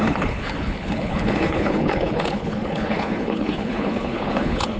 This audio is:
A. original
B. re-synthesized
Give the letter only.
B